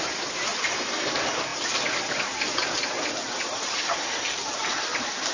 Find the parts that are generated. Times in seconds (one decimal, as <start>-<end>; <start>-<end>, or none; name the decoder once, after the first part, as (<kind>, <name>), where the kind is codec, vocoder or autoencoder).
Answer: 0.5-1.1 (vocoder, BigVGAN v2)